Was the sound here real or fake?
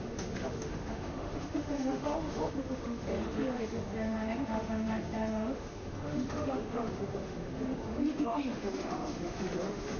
fake